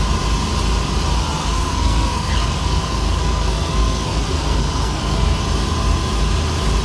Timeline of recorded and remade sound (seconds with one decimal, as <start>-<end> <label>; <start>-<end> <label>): 0.0-1.4 recorded; 1.4-5.4 remade; 5.4-6.8 recorded